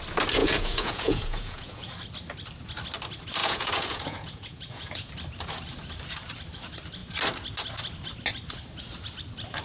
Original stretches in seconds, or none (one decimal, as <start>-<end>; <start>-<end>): 0.0-0.4; 1.9-3.4; 5.1-9.6